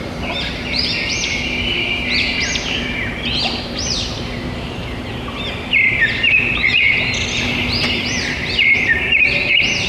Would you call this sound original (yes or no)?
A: no